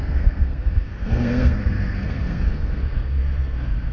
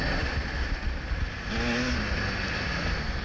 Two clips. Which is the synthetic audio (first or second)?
first